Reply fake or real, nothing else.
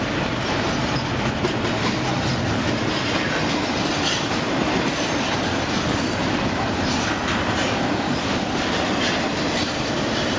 real